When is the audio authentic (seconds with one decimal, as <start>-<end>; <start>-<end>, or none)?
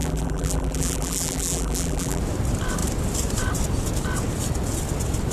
2.2-5.3